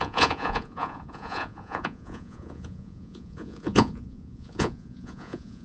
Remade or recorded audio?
remade